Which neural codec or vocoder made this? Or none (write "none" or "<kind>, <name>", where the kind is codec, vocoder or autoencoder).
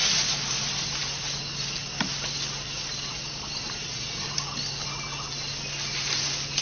none